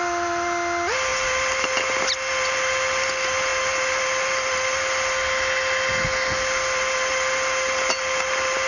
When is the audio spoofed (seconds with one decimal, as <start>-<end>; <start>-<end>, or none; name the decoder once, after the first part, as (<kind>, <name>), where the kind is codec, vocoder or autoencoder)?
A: none